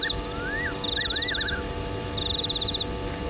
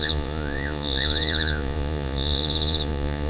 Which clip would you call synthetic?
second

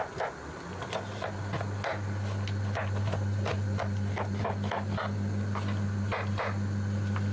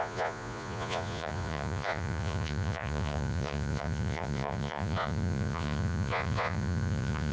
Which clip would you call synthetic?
second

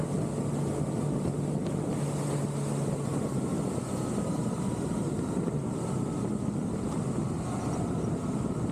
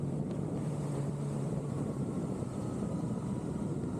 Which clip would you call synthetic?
second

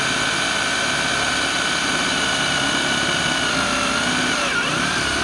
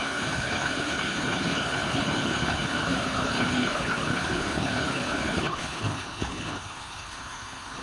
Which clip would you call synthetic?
second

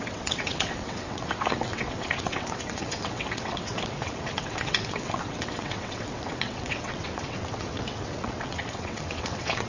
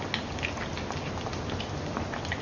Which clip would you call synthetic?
first